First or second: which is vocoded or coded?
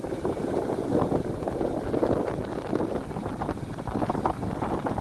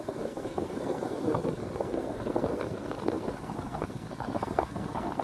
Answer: second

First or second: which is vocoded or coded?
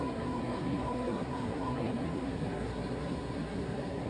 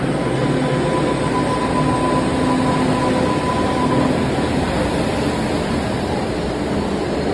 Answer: first